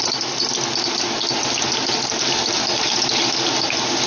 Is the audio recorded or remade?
recorded